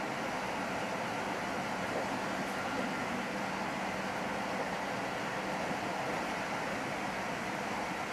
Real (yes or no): yes